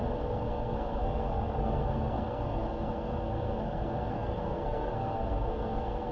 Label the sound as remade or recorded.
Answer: remade